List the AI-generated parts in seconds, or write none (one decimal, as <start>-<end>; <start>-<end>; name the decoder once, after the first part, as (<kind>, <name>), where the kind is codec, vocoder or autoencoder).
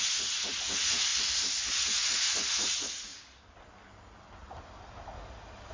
0.0-1.1 (vocoder, Vocos); 1.7-3.1